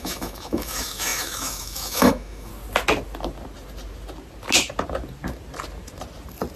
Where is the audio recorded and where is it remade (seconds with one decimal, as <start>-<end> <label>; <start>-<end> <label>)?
0.0-2.5 remade; 2.5-6.6 recorded